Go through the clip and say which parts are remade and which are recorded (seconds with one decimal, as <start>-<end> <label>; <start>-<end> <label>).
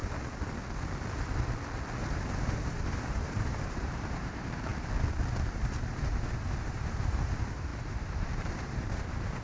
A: 0.0-2.0 recorded; 2.0-4.7 remade; 4.7-5.5 recorded; 5.5-9.4 remade